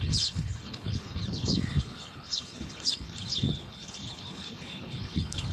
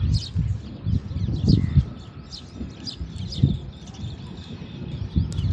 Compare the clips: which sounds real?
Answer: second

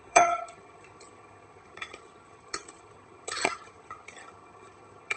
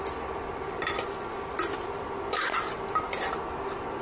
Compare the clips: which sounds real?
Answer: second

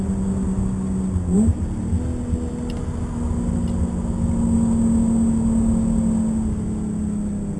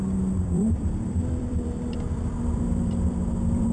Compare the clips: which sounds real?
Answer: first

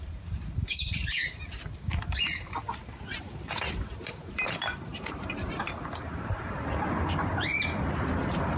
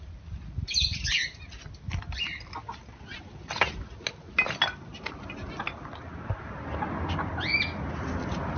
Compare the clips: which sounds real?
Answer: second